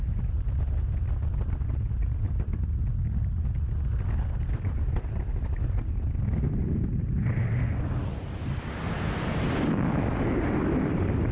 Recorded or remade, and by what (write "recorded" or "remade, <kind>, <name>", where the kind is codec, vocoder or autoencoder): recorded